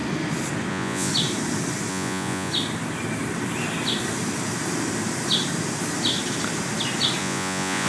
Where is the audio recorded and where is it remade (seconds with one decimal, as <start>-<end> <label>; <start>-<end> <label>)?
0.0-0.7 recorded; 0.7-1.1 remade; 1.1-1.9 recorded; 1.9-2.5 remade; 2.5-7.2 recorded; 7.2-7.9 remade